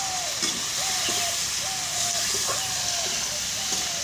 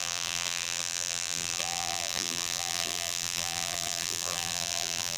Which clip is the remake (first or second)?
second